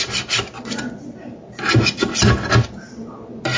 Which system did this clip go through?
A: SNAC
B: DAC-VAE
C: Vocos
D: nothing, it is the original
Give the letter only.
D